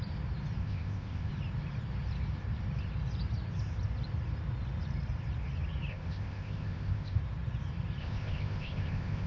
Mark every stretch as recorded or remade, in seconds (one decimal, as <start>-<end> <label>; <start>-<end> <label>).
0.0-0.6 recorded; 0.6-1.3 remade; 1.3-5.9 recorded; 5.9-7.2 remade; 7.2-8.0 recorded; 8.0-9.3 remade